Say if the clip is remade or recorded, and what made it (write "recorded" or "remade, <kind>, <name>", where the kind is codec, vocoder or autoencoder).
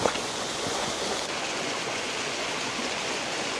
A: remade, vocoder, Vocos